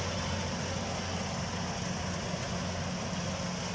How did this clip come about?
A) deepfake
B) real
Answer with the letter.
B